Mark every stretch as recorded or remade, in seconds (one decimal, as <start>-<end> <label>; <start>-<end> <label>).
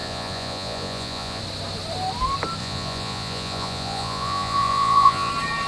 0.0-1.4 remade; 1.4-2.6 recorded; 2.6-5.3 remade; 5.3-5.7 recorded